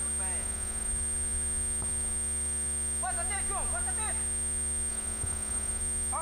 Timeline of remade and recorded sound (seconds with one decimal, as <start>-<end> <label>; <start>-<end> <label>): 0.0-0.4 recorded; 0.4-0.9 remade; 0.9-4.9 recorded; 4.9-5.8 remade; 5.8-6.2 recorded